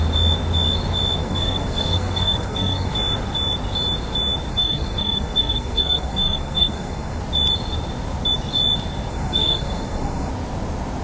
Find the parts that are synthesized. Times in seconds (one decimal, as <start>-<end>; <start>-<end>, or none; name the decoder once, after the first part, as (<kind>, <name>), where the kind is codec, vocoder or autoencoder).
1.2-2.9 (codec, SNAC); 4.5-7.2; 9.1-10.3